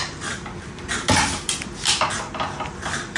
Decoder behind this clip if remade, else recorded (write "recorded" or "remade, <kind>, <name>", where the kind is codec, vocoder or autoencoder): recorded